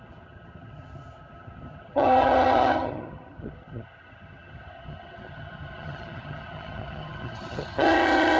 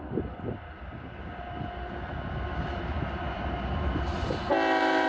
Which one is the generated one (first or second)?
first